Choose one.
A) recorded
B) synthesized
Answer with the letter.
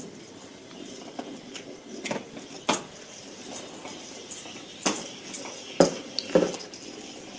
A